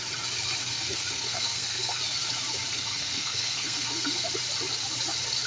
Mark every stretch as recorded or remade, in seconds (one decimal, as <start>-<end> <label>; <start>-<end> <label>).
0.0-0.6 recorded; 0.6-2.0 remade; 2.0-2.7 recorded; 2.7-4.3 remade; 4.3-5.5 recorded